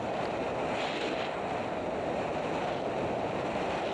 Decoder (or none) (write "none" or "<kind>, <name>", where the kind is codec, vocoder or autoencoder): none